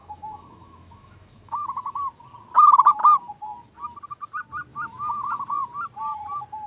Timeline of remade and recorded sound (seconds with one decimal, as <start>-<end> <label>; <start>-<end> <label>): 0.0-2.0 remade; 2.0-4.7 recorded; 4.7-5.4 remade; 5.4-6.7 recorded

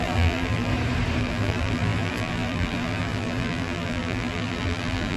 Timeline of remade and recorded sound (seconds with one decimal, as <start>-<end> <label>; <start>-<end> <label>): 0.0-0.7 remade; 0.7-1.2 recorded; 1.2-5.2 remade

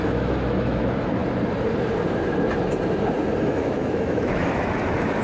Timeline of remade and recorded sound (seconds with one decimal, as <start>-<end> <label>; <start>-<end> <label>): 0.0-1.2 remade; 1.2-3.4 recorded; 3.4-5.2 remade

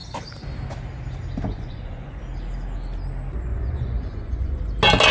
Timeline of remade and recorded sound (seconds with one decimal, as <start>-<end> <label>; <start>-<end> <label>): 0.0-1.5 recorded; 1.5-2.2 remade; 2.2-3.5 recorded; 3.5-4.6 remade; 4.6-5.1 recorded

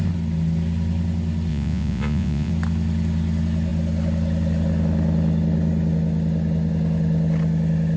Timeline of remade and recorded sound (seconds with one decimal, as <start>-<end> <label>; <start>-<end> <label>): 0.0-1.5 recorded; 1.5-2.5 remade; 2.5-8.0 recorded

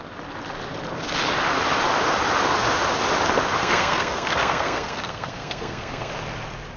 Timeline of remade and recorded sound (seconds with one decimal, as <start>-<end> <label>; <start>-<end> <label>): 0.0-3.6 recorded; 3.6-6.1 remade; 6.1-6.8 recorded